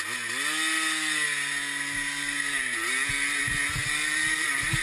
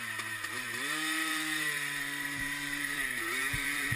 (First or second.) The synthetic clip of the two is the second